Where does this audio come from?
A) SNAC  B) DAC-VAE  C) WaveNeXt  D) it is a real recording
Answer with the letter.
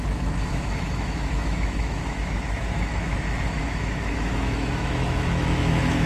B